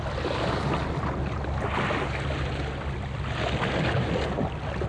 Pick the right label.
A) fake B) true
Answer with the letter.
B